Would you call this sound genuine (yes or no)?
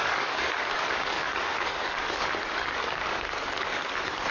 no